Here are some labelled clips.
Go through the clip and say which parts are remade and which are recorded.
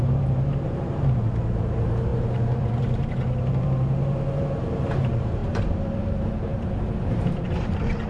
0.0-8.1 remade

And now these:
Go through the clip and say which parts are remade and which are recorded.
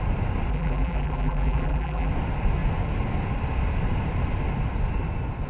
0.0-0.5 recorded; 0.5-2.1 remade; 2.1-5.5 recorded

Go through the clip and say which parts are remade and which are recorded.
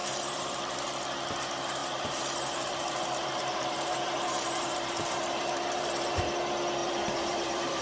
0.0-1.0 remade; 1.0-1.8 recorded; 1.8-6.3 remade; 6.3-6.8 recorded; 6.8-7.8 remade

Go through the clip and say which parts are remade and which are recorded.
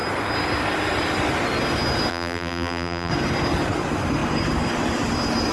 0.0-2.1 recorded; 2.1-3.1 remade; 3.1-5.5 recorded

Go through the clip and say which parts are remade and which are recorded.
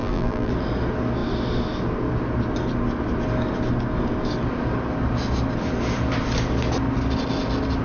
0.0-0.5 remade; 0.5-7.8 recorded